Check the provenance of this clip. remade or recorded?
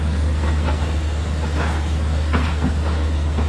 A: remade